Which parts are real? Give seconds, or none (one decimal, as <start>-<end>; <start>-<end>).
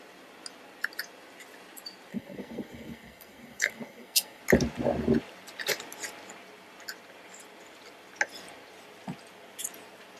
0.0-2.1; 4.4-10.2